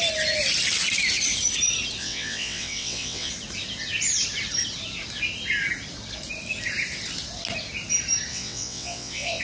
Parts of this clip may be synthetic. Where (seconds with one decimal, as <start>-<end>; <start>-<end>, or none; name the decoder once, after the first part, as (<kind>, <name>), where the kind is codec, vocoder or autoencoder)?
2.0-3.3 (vocoder, WaveNeXt); 8.3-9.4